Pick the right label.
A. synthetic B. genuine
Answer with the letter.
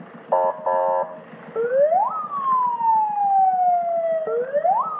B